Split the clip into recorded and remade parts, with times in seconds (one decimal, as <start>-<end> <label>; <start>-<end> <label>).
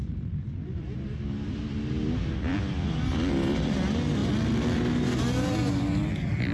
0.0-6.5 recorded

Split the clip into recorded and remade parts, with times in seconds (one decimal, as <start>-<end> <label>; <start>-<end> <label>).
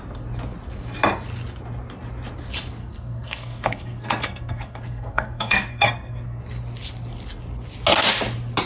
0.0-2.8 recorded; 2.8-6.4 remade; 6.4-8.7 recorded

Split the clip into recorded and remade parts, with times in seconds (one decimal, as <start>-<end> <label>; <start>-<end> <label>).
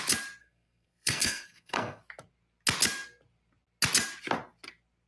0.0-0.4 recorded; 0.4-2.0 remade; 2.0-5.1 recorded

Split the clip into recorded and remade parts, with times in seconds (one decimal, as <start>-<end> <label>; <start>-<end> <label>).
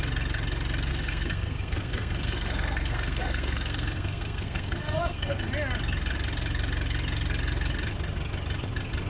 0.0-0.9 recorded; 0.9-5.5 remade; 5.5-9.1 recorded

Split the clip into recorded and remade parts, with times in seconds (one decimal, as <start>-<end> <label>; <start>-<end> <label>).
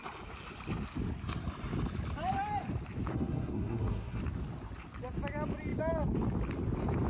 0.0-3.1 recorded; 3.1-4.2 remade; 4.2-7.1 recorded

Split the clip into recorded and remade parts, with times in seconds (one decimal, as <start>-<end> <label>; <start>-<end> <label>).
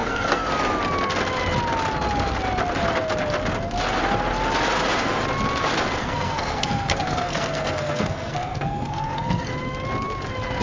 0.0-0.5 remade; 0.5-6.0 recorded; 6.0-9.5 remade; 9.5-10.6 recorded